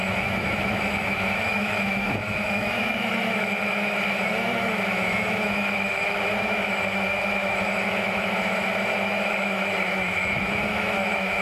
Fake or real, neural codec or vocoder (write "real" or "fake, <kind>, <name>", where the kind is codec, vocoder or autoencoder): fake, autoencoder, DAC-VAE